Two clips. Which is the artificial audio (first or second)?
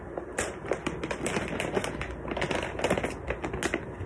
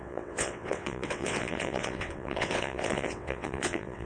second